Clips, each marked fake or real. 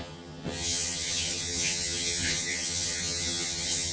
fake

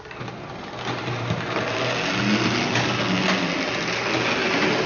real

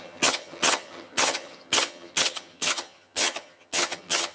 fake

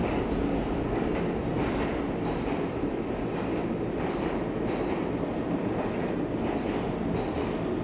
real